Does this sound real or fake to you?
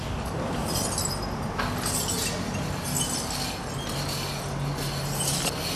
real